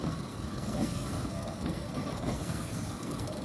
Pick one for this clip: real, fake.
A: fake